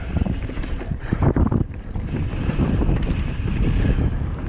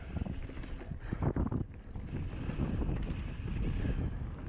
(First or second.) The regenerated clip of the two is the first